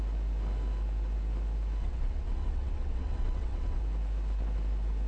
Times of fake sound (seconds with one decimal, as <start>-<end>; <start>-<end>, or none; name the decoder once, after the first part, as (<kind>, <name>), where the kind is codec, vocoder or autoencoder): 1.8-3.8 (vocoder, WaveNeXt)